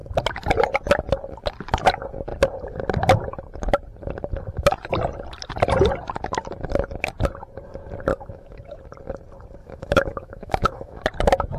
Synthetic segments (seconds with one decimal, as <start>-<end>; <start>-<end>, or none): 8.1-8.8; 9.6-11.0

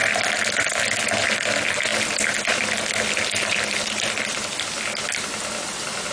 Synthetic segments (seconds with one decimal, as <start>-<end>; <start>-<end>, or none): none

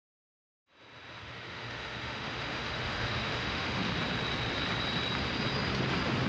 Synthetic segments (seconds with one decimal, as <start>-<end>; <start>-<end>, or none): 0.0-3.8

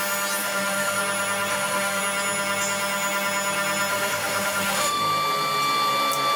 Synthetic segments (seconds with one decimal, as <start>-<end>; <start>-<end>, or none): 0.4-1.0; 1.5-2.0; 3.9-5.0

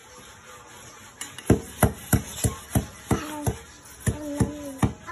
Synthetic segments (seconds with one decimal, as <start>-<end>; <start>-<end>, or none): none

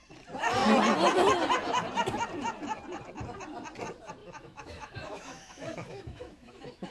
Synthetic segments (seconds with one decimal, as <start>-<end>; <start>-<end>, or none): 4.2-6.9